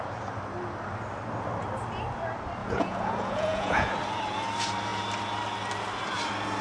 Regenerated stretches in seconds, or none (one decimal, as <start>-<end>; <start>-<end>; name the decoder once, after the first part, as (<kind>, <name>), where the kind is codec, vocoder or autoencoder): 2.6-3.9 (vocoder, Vocos)